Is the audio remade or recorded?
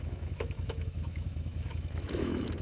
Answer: remade